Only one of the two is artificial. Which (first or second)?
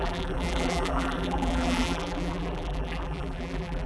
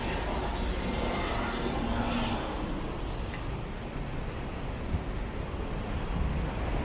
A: first